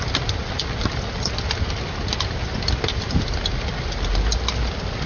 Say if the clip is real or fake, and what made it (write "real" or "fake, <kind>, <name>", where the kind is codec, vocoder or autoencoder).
real